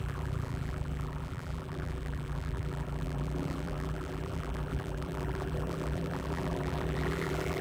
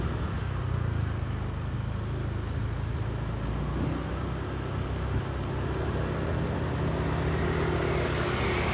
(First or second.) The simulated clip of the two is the first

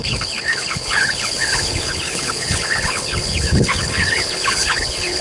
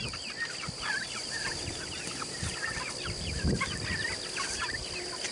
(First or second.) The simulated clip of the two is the first